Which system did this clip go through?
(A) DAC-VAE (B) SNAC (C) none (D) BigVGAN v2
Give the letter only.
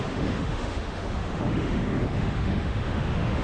A